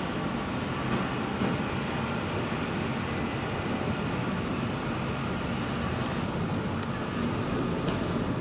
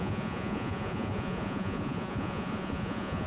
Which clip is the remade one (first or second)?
second